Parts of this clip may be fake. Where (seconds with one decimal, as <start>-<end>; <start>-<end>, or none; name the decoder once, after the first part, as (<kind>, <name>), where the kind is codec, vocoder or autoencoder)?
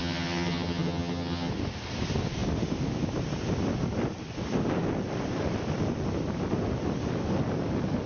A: 0.0-1.5 (vocoder, HiFi-GAN)